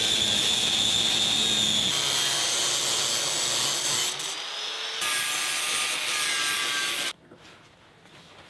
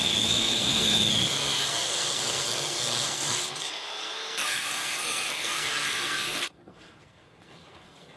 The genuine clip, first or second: first